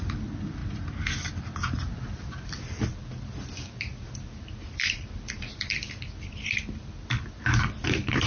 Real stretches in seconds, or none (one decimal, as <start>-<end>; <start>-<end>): 0.6-1.4